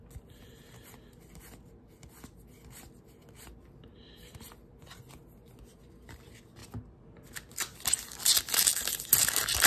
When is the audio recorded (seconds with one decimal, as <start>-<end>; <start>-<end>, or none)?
0.0-9.7